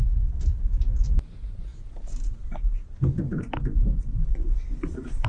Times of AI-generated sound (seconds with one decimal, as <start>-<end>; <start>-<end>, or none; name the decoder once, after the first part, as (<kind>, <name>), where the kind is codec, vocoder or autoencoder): none